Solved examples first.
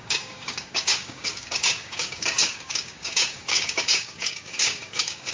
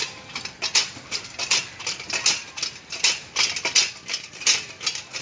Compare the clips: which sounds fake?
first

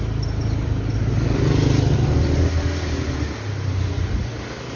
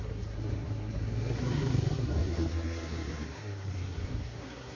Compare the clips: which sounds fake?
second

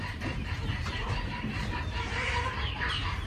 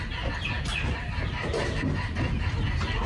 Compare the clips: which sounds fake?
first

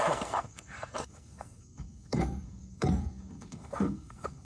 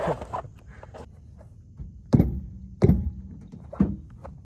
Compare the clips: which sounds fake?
first